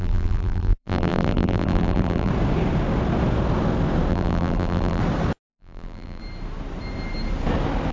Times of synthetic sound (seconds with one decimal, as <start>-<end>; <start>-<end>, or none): 0.0-2.3; 4.1-5.0; 5.5-6.2